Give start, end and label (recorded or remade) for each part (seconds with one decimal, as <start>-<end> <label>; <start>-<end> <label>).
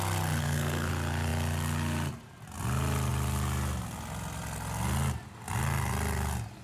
0.0-0.4 recorded; 0.4-0.9 remade; 0.9-6.6 recorded